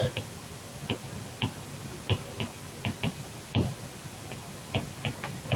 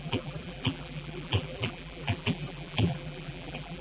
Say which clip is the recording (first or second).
first